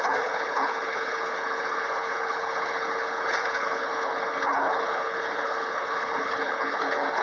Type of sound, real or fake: fake